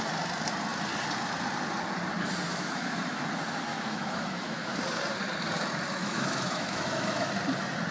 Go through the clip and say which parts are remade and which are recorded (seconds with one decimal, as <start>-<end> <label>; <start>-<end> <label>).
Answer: 0.0-2.5 recorded; 2.5-3.2 remade; 3.2-3.7 recorded; 3.7-4.8 remade; 4.8-6.0 recorded; 6.0-7.3 remade; 7.3-7.9 recorded